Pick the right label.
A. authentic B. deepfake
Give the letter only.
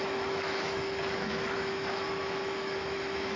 B